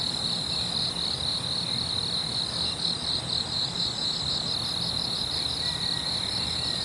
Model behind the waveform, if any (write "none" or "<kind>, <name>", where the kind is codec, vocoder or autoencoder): none